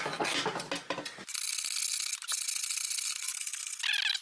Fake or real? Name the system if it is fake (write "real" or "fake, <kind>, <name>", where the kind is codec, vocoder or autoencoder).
real